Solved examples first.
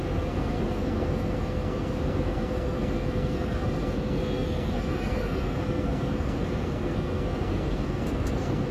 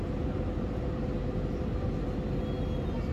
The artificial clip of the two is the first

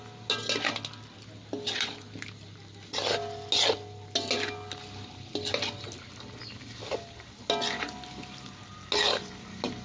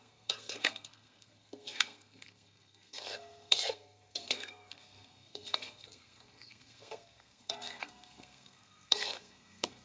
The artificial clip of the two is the second